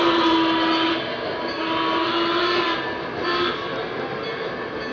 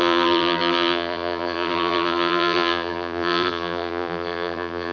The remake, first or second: second